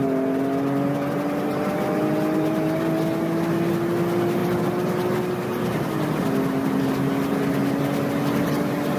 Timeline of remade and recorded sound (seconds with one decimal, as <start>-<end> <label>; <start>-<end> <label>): 0.0-9.0 recorded